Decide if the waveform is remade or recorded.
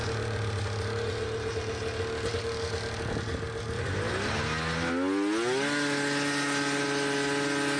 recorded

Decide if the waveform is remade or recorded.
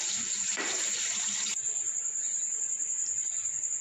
remade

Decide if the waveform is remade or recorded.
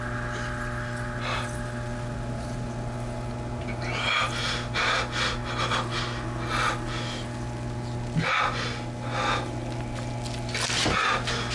recorded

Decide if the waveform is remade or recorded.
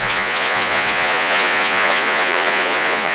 remade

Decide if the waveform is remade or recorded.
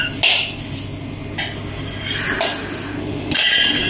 recorded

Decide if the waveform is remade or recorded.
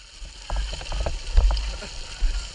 recorded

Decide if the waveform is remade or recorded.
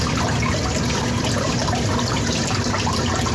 recorded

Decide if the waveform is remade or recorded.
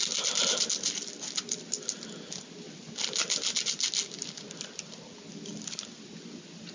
recorded